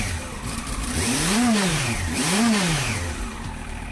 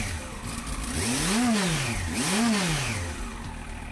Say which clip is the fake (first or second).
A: first